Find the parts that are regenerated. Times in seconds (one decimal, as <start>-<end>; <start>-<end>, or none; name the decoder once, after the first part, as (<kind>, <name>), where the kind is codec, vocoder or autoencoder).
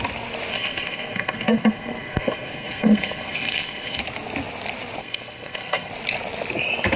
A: 0.5-4.0 (codec, SNAC); 5.0-5.9